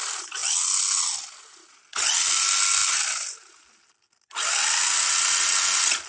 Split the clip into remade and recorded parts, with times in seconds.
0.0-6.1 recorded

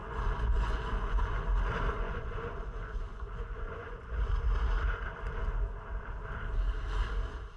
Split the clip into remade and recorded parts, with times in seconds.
0.0-1.4 remade; 1.4-1.9 recorded; 1.9-4.3 remade; 4.3-7.6 recorded

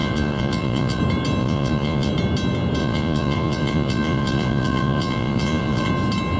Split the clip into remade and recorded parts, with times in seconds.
0.0-1.0 remade; 1.0-1.4 recorded; 1.4-2.1 remade; 2.1-2.8 recorded; 2.8-5.9 remade; 5.9-6.4 recorded

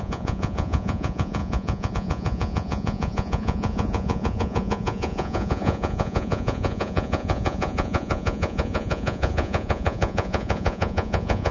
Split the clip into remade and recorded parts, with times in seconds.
0.0-11.5 remade